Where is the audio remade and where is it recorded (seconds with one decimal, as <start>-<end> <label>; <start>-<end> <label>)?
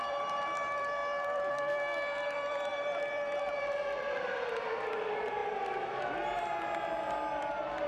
0.0-5.4 remade; 5.4-7.3 recorded; 7.3-7.9 remade